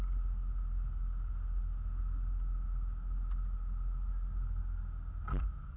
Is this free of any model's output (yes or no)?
yes